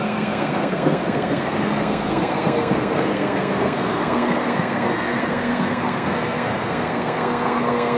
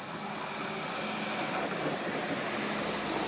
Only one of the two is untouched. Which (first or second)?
second